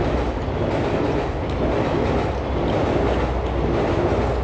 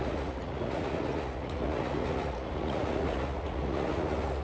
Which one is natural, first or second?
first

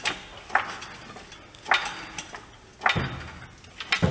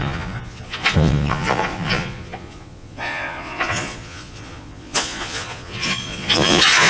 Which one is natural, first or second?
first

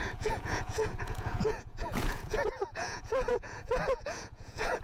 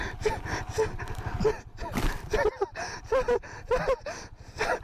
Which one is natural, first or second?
second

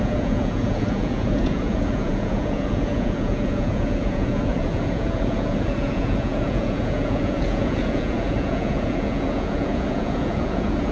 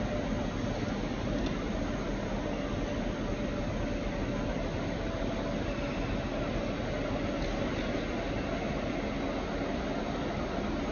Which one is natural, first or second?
second